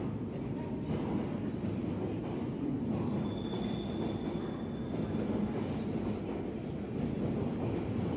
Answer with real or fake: real